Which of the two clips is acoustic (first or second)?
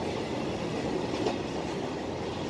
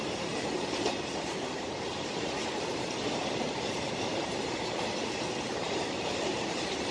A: first